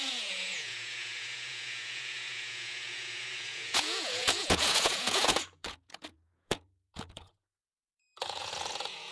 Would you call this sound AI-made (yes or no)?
yes